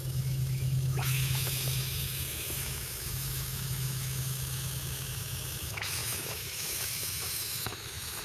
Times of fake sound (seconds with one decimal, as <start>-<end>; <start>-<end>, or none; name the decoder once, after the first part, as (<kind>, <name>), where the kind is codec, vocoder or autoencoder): 0.0-8.2 (autoencoder, DAC-VAE)